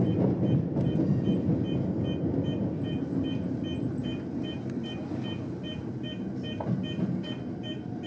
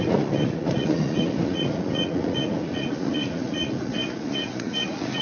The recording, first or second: first